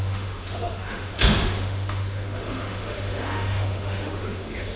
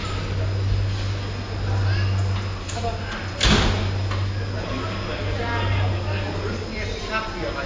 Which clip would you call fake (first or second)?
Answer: first